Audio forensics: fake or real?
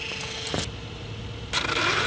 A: real